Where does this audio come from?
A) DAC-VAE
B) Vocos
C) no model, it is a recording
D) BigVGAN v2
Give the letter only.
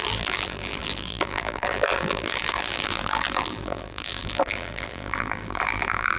D